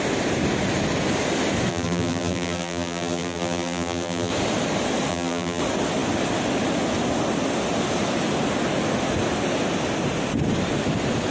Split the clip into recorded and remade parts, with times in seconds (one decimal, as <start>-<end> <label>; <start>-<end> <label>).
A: 0.0-1.7 recorded; 1.7-4.3 remade; 4.3-5.1 recorded; 5.1-5.6 remade; 5.6-11.3 recorded